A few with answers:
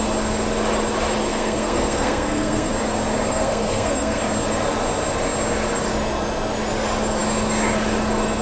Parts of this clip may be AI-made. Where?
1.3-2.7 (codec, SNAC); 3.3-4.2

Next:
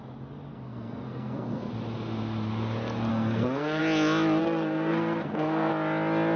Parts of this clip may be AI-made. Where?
0.5-1.7 (codec, SNAC); 3.1-3.8; 4.4-5.7

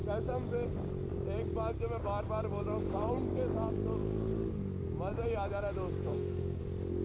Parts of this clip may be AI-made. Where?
6.1-6.6 (codec, SNAC)